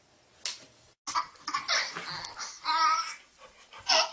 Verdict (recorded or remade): recorded